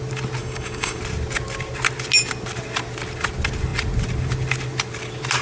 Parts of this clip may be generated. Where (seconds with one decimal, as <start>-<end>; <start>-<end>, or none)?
0.4-1.0